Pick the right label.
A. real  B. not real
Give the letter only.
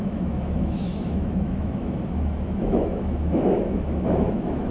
B